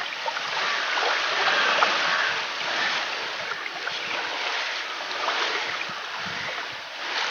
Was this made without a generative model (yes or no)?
no